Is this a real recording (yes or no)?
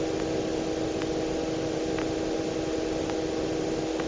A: yes